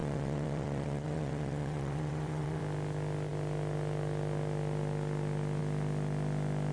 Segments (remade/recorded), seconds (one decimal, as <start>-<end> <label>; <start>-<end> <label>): 0.0-2.6 remade; 2.6-6.7 recorded

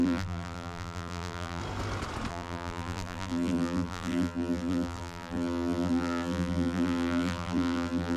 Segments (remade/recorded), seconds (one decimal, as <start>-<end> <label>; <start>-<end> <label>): 0.0-1.6 remade; 1.6-2.3 recorded; 2.3-8.2 remade

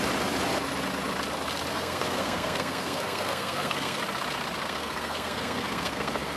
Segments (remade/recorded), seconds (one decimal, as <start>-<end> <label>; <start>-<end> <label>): 0.0-1.7 recorded; 1.7-4.0 remade; 4.0-4.6 recorded; 4.6-6.4 remade

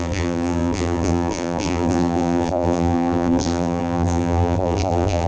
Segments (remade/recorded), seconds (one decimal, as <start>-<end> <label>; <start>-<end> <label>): 0.0-5.3 remade

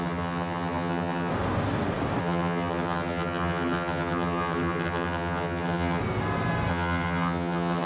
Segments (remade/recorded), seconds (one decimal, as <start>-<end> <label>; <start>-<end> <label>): 0.0-1.3 remade; 1.3-2.2 recorded; 2.2-6.0 remade; 6.0-6.7 recorded; 6.7-7.9 remade

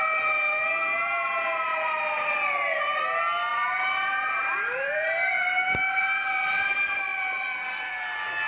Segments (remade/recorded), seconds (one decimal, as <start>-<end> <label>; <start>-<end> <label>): 0.0-1.7 recorded; 1.7-3.0 remade; 3.0-3.5 recorded; 3.5-6.0 remade; 6.0-7.1 recorded; 7.1-7.9 remade; 7.9-8.5 recorded

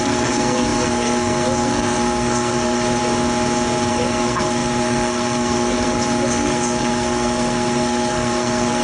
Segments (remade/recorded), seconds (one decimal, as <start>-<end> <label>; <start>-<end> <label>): 0.0-3.0 remade; 3.0-3.9 recorded; 3.9-8.8 remade

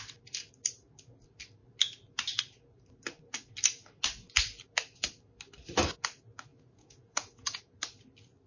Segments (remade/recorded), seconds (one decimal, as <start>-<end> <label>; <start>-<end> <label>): 0.0-6.5 recorded; 6.5-7.6 remade; 7.6-8.5 recorded